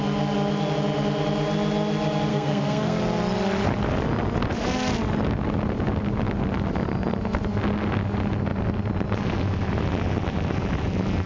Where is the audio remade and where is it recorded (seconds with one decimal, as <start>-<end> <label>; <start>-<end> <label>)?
0.0-2.3 recorded; 2.3-3.0 remade; 3.0-11.3 recorded